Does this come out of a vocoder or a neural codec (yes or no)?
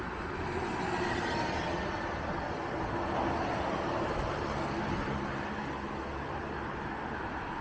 no